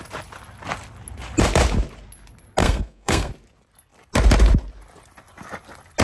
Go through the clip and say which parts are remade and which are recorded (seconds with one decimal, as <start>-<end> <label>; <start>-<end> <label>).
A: 0.0-2.6 recorded; 2.6-3.3 remade; 3.3-6.0 recorded